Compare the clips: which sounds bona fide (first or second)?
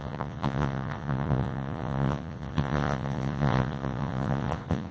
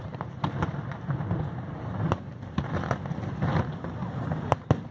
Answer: second